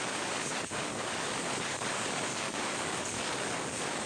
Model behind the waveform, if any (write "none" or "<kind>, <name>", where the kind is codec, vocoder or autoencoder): codec, DAC